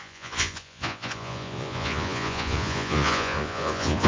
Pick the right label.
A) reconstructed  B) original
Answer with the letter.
A